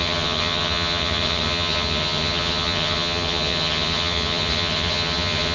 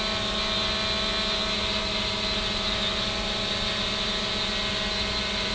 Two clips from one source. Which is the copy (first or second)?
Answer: first